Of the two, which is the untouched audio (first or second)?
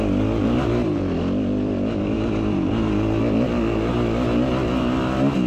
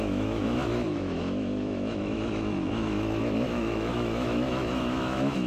first